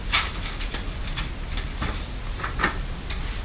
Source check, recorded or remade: recorded